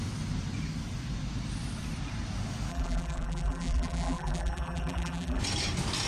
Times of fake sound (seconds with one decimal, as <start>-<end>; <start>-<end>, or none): 2.7-5.4